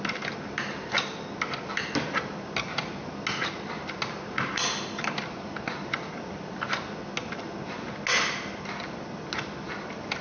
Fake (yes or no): no